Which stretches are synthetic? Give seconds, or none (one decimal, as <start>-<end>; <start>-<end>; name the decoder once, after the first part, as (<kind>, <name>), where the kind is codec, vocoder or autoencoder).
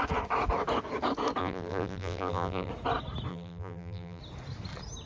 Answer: 1.4-2.7 (vocoder, BigVGAN v2); 3.3-4.2